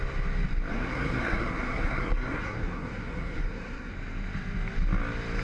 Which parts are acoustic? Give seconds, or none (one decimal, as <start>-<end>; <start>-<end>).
0.0-0.7; 3.9-5.4